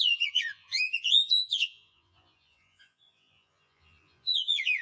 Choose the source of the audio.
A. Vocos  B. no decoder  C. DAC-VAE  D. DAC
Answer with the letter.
A